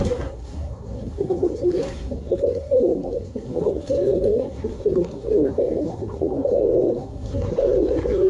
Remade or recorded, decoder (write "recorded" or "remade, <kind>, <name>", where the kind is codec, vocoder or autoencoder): remade, codec, SNAC